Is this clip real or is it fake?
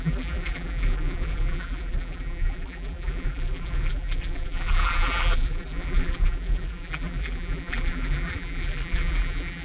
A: fake